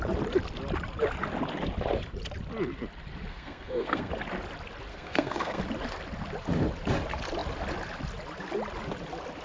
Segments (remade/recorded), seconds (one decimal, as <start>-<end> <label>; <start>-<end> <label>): 0.0-3.3 recorded; 3.3-4.1 remade; 4.1-4.9 recorded; 4.9-5.6 remade; 5.6-9.4 recorded